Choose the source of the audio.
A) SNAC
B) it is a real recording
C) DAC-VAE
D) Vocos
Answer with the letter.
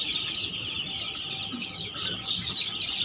B